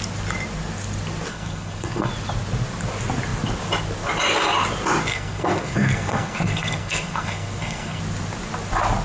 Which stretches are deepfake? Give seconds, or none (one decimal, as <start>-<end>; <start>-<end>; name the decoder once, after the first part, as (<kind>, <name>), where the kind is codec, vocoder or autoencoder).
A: 1.3-2.1 (codec, SNAC); 5.1-8.0